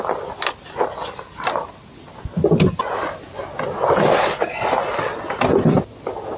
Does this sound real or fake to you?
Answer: real